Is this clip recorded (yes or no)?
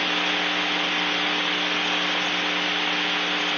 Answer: yes